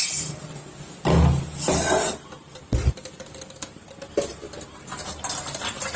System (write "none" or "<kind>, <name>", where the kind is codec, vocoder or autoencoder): none